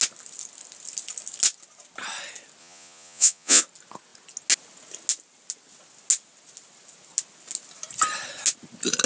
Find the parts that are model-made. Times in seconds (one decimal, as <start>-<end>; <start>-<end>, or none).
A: 2.6-3.6